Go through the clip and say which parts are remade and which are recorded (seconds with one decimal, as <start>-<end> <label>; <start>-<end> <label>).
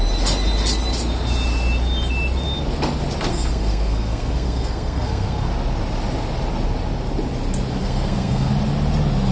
0.0-3.3 recorded; 3.3-5.5 remade; 5.5-7.8 recorded; 7.8-8.5 remade; 8.5-9.3 recorded